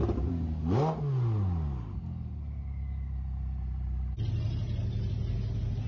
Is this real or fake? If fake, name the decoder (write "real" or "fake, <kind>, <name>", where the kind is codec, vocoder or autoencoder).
real